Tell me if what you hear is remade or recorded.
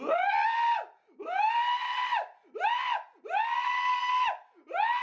recorded